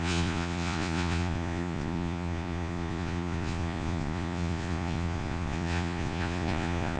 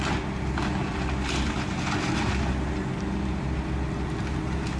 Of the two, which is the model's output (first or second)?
first